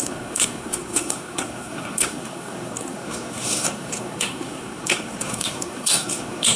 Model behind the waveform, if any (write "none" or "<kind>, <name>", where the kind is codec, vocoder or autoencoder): codec, SNAC